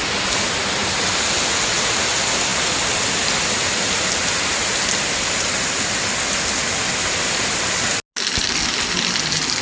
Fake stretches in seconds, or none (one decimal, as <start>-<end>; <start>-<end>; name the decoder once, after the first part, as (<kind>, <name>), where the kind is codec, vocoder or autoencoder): none

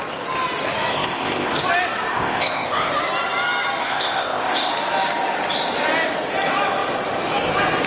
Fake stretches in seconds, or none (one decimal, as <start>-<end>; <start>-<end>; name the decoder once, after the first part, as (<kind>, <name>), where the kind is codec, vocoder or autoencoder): 0.9-1.5 (codec, ZipCodec); 2.1-2.9; 3.8-4.7

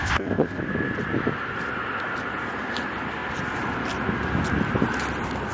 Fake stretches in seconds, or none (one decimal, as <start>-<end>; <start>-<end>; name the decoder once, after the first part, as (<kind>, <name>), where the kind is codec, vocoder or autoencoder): 0.0-0.6 (codec, ZipCodec)

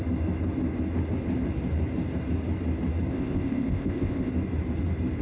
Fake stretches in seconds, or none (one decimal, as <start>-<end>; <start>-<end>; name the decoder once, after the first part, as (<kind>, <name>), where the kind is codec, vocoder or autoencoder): 3.1-4.3 (codec, ZipCodec)

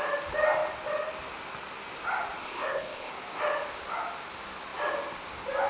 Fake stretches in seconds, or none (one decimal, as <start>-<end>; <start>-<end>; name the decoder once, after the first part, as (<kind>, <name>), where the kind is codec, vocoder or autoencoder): 2.4-3.1 (codec, ZipCodec)